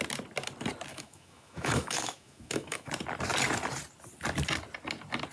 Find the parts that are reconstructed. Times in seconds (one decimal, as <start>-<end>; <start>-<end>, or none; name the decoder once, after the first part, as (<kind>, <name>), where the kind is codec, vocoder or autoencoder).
0.9-2.9 (autoencoder, DAC-VAE)